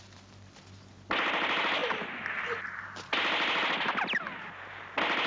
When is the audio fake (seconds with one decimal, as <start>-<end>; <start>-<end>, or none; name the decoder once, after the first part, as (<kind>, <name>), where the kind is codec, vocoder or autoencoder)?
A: none